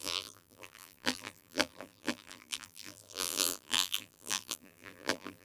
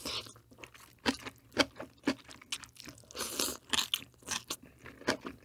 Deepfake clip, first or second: first